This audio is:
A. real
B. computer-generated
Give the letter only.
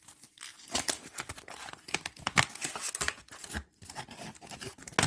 A